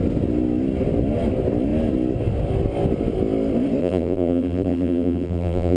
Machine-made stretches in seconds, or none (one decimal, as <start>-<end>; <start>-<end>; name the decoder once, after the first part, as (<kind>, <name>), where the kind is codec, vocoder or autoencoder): 3.8-5.8 (vocoder, BigVGAN v2)